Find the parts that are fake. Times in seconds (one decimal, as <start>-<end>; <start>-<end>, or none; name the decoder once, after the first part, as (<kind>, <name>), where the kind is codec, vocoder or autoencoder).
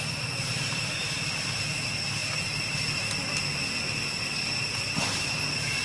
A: none